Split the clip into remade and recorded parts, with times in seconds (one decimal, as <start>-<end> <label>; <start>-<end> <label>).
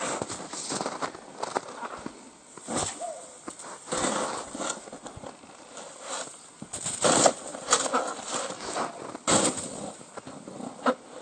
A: 0.0-11.2 recorded